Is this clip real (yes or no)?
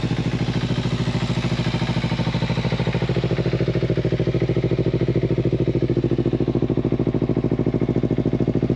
yes